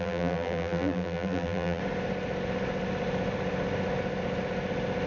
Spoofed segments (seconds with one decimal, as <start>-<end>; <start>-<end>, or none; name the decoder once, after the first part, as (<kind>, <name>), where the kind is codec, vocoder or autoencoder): 0.0-1.8 (vocoder, BigVGAN v2)